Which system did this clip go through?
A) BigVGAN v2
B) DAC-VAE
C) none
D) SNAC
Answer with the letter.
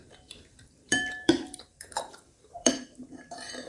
A